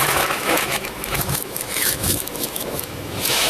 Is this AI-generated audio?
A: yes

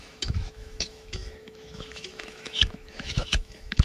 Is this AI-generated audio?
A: yes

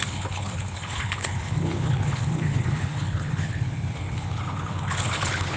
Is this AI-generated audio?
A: yes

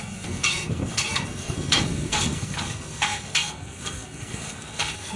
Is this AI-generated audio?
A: yes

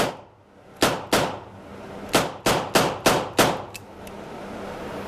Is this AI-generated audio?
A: no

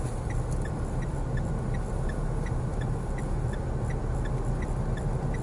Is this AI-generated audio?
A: no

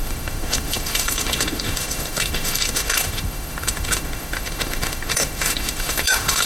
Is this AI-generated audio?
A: yes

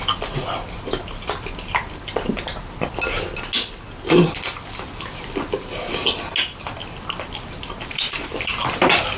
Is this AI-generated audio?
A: no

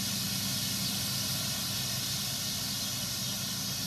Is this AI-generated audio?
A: no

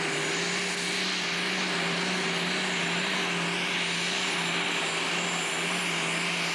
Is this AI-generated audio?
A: no